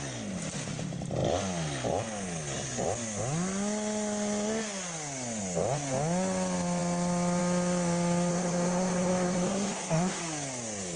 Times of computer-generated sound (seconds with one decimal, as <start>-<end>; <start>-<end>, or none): 8.3-10.2